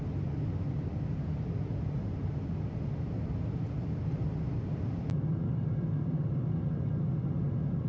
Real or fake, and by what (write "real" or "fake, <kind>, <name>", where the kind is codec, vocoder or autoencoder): real